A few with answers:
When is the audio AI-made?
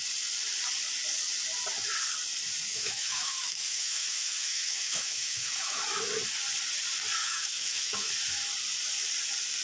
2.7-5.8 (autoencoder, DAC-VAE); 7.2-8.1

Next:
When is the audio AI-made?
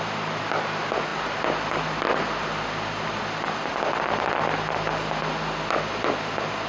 none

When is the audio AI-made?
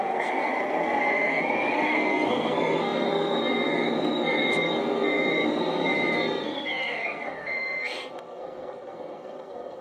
0.0-9.8 (codec, SNAC)